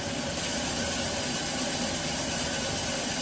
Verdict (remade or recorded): remade